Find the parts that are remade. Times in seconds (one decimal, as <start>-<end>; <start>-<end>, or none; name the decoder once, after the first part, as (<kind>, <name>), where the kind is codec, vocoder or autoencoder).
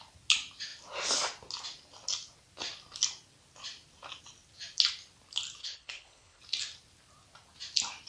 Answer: 5.6-6.4 (codec, HILCodec)